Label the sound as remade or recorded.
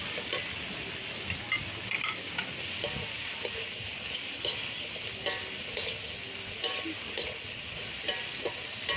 recorded